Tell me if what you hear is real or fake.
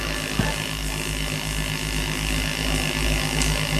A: real